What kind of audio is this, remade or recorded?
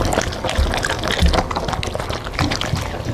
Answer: recorded